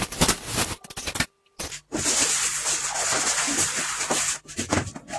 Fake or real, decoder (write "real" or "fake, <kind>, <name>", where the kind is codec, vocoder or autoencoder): real